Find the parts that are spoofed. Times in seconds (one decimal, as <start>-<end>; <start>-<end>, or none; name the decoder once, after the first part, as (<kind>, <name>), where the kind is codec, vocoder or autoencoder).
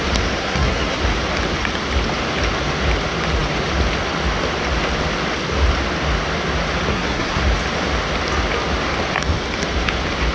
0.4-1.0 (codec, SNAC); 6.9-7.4